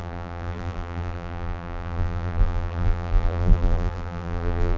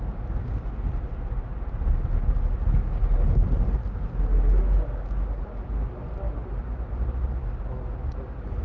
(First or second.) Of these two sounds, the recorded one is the second